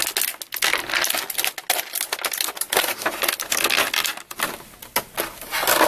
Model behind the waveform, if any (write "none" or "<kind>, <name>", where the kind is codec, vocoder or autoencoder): none